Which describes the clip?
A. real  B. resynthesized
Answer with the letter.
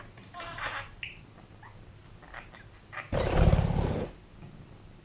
A